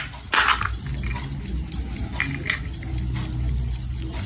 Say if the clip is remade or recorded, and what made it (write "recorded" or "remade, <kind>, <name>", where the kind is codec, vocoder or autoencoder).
recorded